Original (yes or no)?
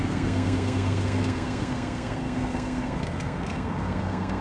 no